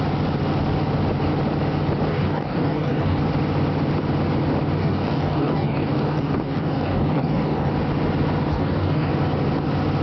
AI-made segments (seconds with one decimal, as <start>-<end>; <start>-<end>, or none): 2.1-3.2; 4.8-7.7; 8.5-9.1